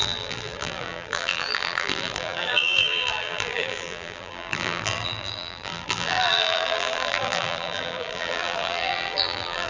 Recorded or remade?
remade